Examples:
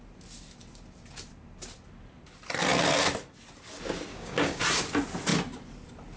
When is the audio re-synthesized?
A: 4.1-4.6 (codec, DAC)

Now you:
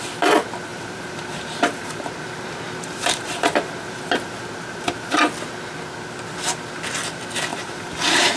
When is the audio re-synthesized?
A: 0.7-5.2 (vocoder, BigVGAN v2); 7.5-8.4

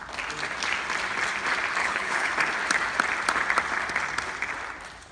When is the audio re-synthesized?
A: 1.8-2.3 (codec, HILCodec)

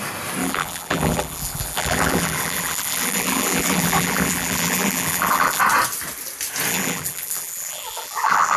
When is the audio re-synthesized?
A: 0.4-5.6 (vocoder, BigVGAN v2); 6.7-8.6

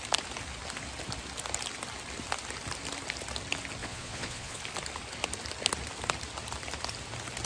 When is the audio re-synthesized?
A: 3.8-4.6 (vocoder, Vocos)

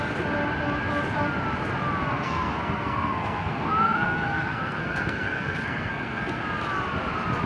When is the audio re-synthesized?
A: 2.1-6.4 (codec, SNAC)